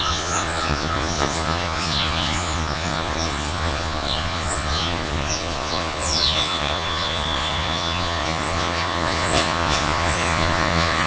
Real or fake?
fake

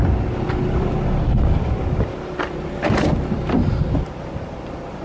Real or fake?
real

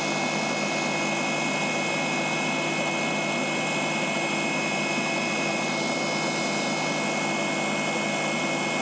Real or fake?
real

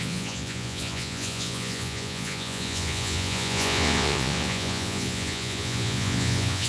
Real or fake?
fake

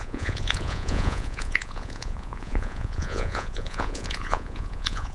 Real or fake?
fake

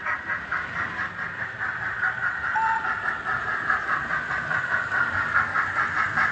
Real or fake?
real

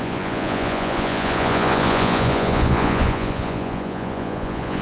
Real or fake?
fake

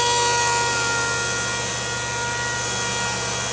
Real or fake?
real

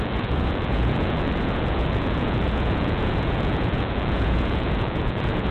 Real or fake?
fake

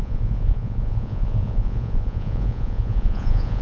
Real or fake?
fake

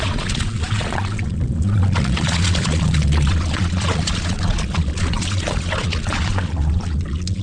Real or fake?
fake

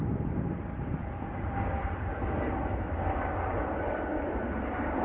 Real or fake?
real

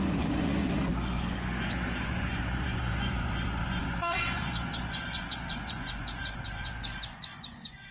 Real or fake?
fake